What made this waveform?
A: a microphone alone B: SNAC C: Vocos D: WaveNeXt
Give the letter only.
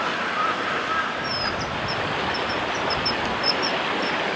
A